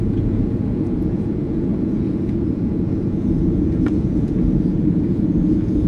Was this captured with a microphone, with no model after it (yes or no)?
no